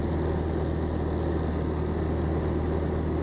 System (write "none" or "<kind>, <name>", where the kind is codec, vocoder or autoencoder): none